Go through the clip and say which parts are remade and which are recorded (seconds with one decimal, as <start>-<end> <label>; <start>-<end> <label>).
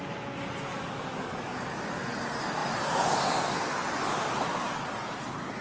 0.0-0.7 recorded; 0.7-1.6 remade; 1.6-5.6 recorded